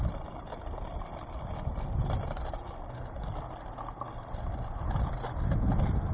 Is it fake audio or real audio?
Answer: real